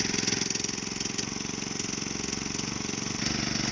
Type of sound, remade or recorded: recorded